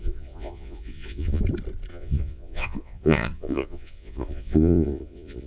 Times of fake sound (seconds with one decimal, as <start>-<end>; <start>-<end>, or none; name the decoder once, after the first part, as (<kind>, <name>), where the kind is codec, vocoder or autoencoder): 0.0-1.4 (vocoder, Vocos); 1.9-5.5